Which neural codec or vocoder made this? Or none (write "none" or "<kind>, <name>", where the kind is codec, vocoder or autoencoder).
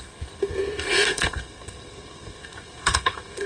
codec, SNAC